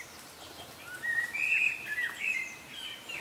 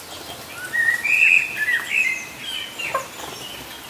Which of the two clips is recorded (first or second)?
second